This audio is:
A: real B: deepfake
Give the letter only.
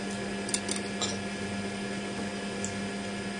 A